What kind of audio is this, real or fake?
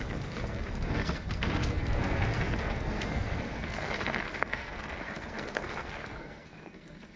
fake